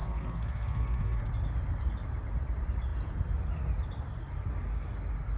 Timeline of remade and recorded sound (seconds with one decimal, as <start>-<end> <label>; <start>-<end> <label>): 0.0-1.3 remade; 1.3-5.4 recorded